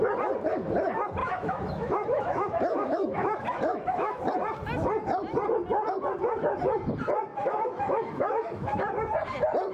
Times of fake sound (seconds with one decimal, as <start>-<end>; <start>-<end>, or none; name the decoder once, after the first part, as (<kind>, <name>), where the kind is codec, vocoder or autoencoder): 1.2-4.3 (autoencoder, DAC-VAE); 7.3-8.8